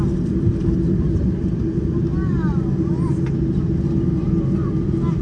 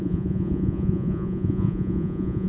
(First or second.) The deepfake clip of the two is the second